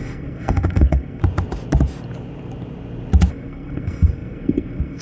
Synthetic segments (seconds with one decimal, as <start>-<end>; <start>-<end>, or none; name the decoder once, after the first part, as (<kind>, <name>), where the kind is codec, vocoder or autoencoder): 0.0-1.2 (codec, SNAC); 3.3-5.0